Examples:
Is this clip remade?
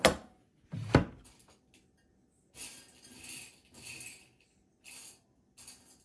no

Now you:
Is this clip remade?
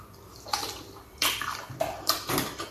yes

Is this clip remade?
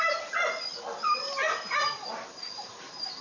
no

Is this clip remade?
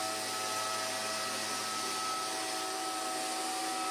no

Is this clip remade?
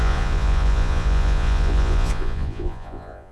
yes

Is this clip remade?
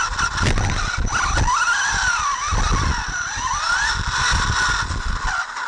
no